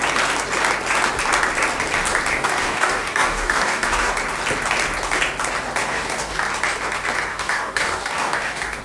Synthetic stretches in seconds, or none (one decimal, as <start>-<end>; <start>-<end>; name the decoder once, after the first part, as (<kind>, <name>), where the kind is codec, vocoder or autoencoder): 2.3-4.1 (codec, DAC); 5.8-6.4; 7.3-8.8